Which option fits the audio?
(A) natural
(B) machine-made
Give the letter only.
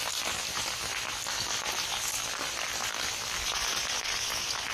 A